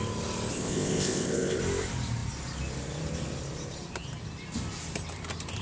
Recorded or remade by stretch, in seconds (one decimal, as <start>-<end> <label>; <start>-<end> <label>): 0.0-0.5 recorded; 0.5-1.6 remade; 1.6-5.6 recorded